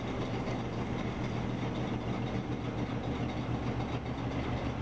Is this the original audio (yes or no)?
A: yes